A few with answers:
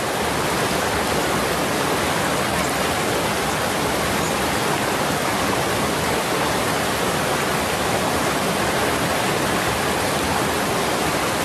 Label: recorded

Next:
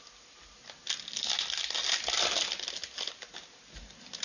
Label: recorded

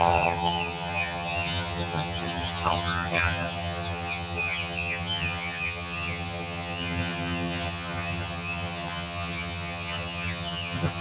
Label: remade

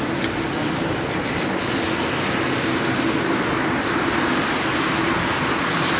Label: recorded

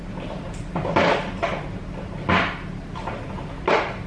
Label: remade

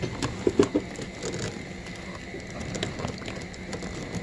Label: recorded